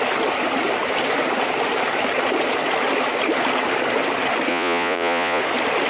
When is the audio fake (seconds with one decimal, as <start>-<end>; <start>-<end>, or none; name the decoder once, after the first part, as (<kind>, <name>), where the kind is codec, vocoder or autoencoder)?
4.5-5.4 (vocoder, Vocos)